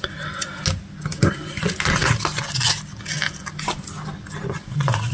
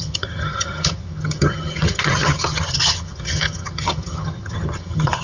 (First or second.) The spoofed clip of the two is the second